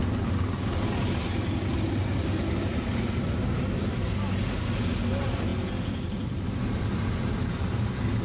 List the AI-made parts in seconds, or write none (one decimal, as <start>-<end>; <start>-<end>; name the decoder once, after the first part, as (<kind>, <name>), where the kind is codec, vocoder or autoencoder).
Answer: none